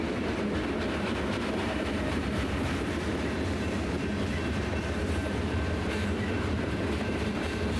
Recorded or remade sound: remade